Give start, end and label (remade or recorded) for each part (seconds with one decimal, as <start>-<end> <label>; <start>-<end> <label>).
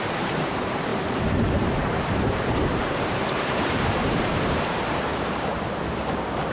0.0-6.5 remade